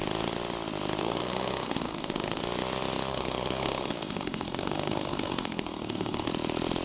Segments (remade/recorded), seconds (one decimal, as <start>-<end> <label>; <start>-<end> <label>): 0.0-1.0 recorded; 1.0-2.4 remade; 2.4-3.1 recorded; 3.1-6.3 remade; 6.3-6.8 recorded